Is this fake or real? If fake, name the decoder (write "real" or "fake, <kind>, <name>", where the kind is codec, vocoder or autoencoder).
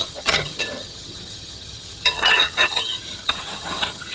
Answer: fake, vocoder, HiFi-GAN